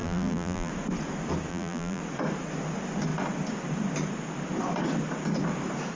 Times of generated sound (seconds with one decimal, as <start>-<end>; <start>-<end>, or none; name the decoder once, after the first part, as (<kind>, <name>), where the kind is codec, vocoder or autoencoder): 0.0-0.7 (vocoder, BigVGAN v2); 1.5-2.0